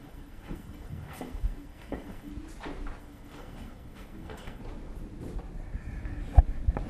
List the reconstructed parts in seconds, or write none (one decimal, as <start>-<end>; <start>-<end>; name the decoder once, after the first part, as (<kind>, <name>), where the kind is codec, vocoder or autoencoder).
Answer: 0.0-2.3 (codec, SNAC); 3.0-4.6